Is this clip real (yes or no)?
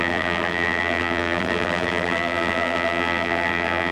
no